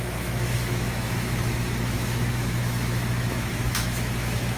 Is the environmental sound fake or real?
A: fake